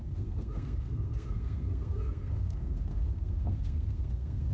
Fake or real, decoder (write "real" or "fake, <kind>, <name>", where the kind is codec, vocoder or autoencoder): fake, codec, SNAC